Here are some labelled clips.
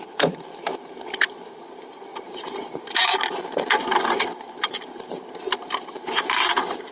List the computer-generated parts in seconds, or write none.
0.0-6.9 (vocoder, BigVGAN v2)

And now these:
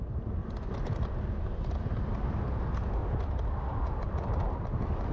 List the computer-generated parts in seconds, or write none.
0.4-2.6 (vocoder, BigVGAN v2); 3.0-4.6

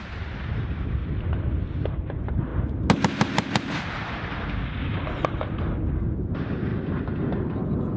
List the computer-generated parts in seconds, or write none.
0.0-1.0 (vocoder, BigVGAN v2); 1.9-2.5; 5.9-6.7

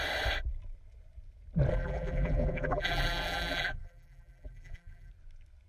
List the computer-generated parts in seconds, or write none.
1.7-5.1 (vocoder, BigVGAN v2)

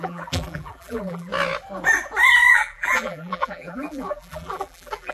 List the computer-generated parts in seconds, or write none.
0.0-1.3 (vocoder, BigVGAN v2); 2.5-5.1

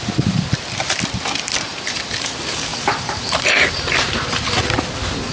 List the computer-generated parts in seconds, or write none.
2.7-4.7 (vocoder, BigVGAN v2)